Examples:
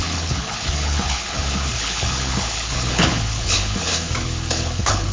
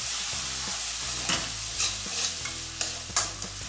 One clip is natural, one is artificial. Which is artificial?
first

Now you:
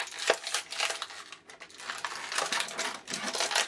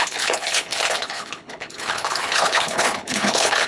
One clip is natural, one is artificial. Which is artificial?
second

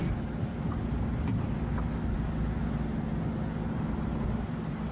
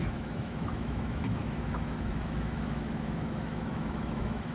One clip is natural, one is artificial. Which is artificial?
second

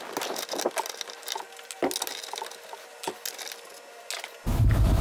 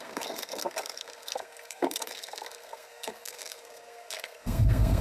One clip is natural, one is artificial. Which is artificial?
second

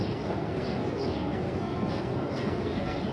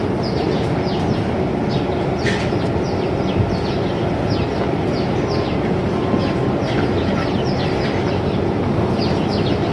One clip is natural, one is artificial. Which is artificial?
first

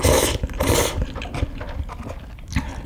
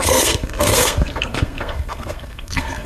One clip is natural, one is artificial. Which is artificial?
second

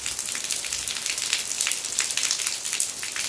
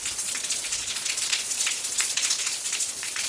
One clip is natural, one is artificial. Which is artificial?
second